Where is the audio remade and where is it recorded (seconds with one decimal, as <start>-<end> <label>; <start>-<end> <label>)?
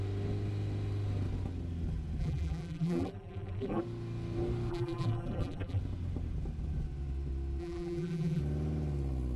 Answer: 0.0-2.2 recorded; 2.2-3.8 remade; 3.8-4.7 recorded; 4.7-5.8 remade; 5.8-7.6 recorded; 7.6-8.4 remade; 8.4-9.4 recorded